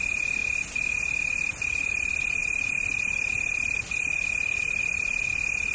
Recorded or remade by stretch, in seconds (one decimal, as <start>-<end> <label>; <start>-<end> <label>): 0.0-5.7 recorded